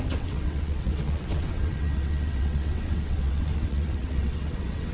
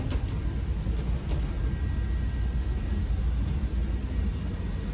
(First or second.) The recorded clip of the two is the second